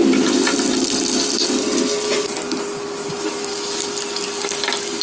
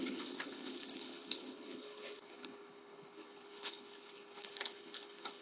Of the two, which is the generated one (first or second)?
second